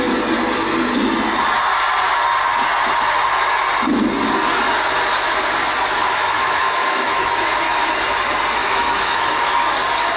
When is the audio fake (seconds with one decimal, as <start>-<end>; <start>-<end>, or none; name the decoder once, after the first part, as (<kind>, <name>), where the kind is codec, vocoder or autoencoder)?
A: 6.0-7.3 (autoencoder, DAC-VAE); 8.6-9.5